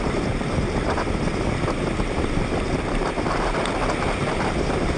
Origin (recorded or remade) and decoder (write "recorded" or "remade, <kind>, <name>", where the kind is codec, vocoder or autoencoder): recorded